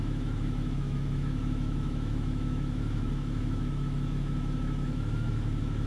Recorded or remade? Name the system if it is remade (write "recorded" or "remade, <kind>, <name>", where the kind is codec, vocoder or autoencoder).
remade, autoencoder, DAC-VAE